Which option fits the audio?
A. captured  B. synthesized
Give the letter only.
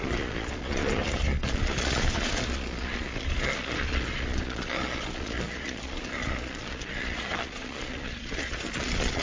B